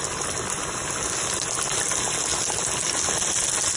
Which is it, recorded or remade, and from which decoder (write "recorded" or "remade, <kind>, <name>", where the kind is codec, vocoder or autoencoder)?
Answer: recorded